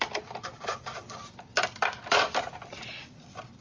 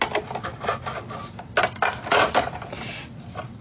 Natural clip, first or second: second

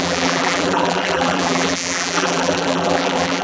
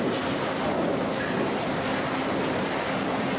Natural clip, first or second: second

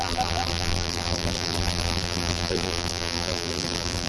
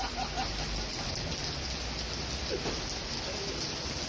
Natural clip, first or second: second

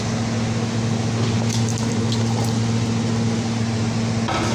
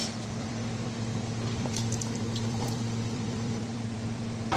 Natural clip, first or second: first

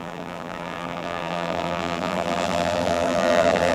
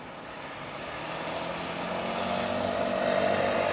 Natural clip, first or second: second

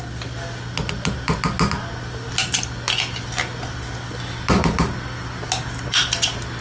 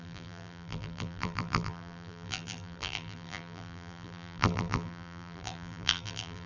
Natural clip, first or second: first